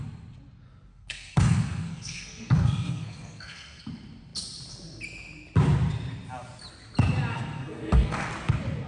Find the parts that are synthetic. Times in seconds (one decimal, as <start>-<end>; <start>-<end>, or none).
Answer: 0.9-3.8; 7.3-8.3